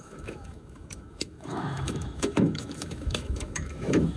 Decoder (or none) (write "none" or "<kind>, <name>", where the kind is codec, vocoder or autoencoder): autoencoder, DAC-VAE